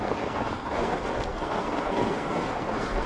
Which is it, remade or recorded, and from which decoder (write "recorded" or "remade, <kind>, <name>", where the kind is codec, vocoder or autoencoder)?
remade, codec, SNAC